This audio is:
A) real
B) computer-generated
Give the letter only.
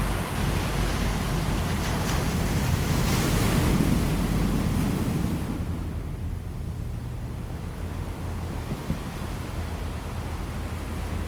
A